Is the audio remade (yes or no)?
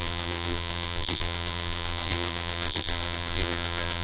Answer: yes